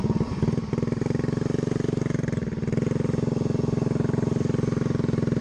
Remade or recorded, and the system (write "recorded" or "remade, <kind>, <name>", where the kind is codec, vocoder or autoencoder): recorded